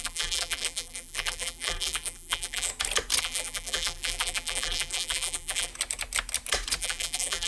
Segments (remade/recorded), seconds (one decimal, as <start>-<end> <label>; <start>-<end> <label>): 0.0-2.7 remade; 2.7-3.2 recorded; 3.2-5.7 remade; 5.7-6.8 recorded; 6.8-7.5 remade